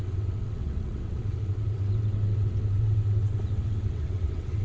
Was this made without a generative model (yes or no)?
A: no